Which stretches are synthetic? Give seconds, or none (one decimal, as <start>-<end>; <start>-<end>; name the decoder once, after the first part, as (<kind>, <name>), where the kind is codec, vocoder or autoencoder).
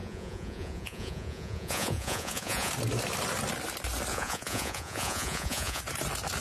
0.0-2.7 (vocoder, Vocos); 4.1-5.8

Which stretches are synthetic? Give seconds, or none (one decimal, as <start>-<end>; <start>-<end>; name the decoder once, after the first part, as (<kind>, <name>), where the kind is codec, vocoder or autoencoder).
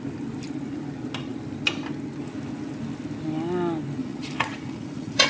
4.0-5.3 (vocoder, Vocos)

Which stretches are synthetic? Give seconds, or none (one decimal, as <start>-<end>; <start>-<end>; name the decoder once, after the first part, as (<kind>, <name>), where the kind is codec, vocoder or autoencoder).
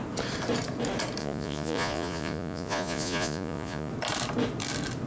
1.2-3.9 (vocoder, Vocos)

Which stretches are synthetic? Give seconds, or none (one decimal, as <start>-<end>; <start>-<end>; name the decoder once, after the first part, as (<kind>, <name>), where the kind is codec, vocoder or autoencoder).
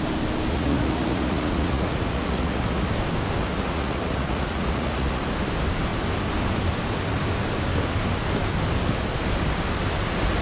0.5-2.9 (vocoder, Vocos); 3.4-5.2